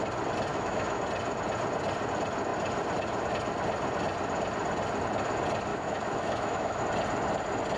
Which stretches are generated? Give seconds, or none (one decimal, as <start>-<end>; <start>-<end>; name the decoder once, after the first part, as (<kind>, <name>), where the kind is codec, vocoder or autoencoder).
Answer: 0.5-1.0 (autoencoder, DAC-VAE); 5.7-6.8